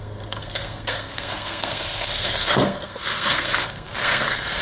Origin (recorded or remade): remade